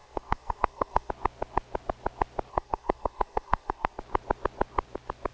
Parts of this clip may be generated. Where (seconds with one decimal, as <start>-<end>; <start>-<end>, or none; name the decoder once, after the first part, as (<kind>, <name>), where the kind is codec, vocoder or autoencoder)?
0.0-1.1 (codec, SNAC); 2.5-4.0

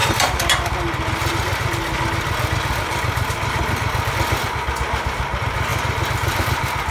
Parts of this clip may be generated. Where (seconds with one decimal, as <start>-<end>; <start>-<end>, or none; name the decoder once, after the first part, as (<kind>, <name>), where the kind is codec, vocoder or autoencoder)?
0.0-4.1 (vocoder, BigVGAN v2)

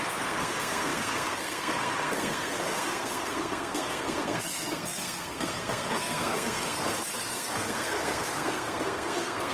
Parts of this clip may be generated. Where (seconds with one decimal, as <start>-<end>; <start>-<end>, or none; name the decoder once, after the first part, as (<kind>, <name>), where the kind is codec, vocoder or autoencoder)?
0.0-9.5 (codec, SNAC)